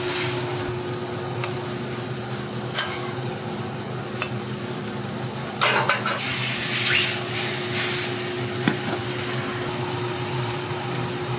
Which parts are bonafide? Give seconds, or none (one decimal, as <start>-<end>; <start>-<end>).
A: 0.0-11.4